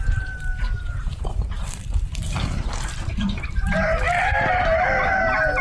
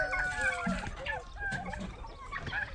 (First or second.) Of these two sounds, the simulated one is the first